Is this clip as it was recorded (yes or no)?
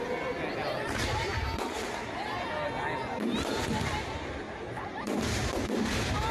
yes